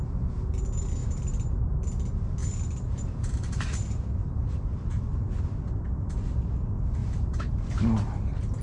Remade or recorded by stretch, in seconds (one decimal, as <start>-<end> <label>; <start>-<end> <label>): 0.0-1.0 recorded; 1.0-1.6 remade; 1.6-2.4 recorded; 2.4-5.1 remade; 5.1-7.0 recorded; 7.0-7.8 remade; 7.8-8.6 recorded